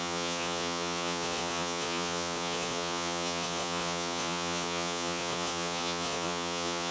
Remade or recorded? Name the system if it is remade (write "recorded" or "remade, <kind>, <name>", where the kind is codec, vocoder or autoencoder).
remade, vocoder, Vocos